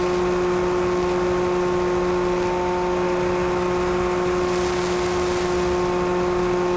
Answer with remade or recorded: recorded